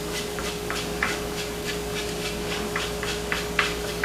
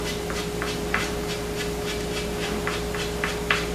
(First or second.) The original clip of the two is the second